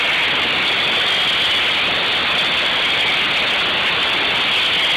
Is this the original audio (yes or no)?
yes